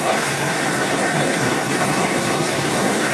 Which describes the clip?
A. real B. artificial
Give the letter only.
B